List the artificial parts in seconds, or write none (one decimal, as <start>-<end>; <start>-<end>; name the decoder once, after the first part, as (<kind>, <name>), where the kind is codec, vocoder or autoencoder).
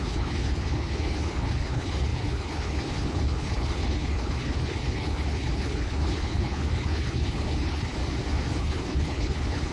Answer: 0.0-8.0 (codec, HILCodec); 8.6-9.7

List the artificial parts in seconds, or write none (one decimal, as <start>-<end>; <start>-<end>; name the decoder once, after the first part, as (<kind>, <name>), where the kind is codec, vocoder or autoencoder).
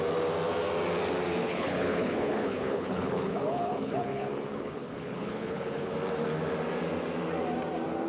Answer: 1.4-5.9 (codec, HILCodec)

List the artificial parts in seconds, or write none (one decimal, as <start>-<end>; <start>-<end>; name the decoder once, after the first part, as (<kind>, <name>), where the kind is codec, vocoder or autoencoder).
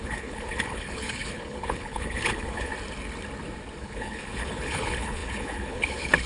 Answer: 0.0-2.7 (codec, HILCodec); 3.8-6.3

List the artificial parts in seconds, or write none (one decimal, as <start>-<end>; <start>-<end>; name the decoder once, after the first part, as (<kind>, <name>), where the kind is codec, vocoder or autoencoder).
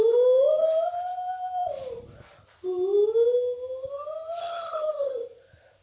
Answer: 4.4-5.1 (codec, HILCodec)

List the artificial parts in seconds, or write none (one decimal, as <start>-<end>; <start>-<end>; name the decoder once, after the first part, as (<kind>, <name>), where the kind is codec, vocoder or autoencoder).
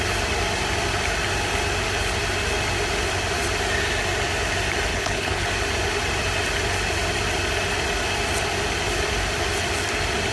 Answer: 4.9-5.5 (codec, HILCodec)